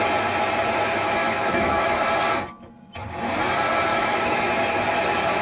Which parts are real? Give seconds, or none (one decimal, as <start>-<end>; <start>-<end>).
0.0-1.2; 2.0-3.9; 4.5-5.4